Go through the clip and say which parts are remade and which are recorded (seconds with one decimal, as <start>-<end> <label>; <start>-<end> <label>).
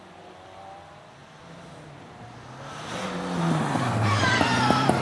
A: 0.0-1.2 remade; 1.2-4.2 recorded; 4.2-5.0 remade